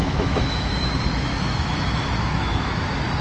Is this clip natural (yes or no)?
no